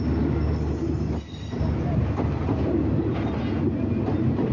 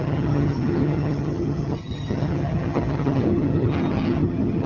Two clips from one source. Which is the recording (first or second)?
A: first